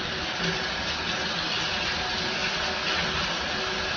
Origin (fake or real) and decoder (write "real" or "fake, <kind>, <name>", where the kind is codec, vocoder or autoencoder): real